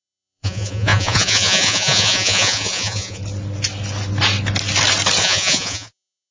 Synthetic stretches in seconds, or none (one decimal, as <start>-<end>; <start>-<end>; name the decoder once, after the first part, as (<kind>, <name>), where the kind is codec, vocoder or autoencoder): 0.0-3.2 (vocoder, Vocos); 5.2-6.3